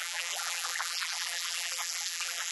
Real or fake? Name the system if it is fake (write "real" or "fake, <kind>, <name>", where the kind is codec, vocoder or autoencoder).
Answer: fake, vocoder, BigVGAN v2